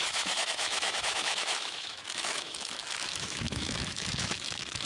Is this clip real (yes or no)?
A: no